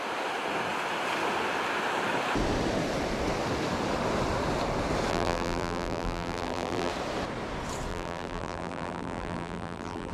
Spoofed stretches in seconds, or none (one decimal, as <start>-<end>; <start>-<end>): 5.1-6.9; 7.9-10.1

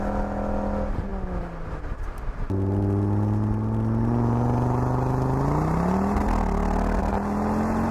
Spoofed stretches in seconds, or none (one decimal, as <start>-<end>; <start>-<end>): none